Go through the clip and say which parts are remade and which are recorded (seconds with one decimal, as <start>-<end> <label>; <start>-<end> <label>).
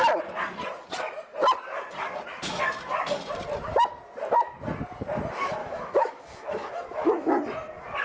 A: 0.0-5.6 recorded; 5.6-7.3 remade; 7.3-8.0 recorded